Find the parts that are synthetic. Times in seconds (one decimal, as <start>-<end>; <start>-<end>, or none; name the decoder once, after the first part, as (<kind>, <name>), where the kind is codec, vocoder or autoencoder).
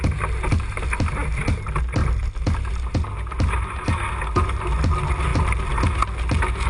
none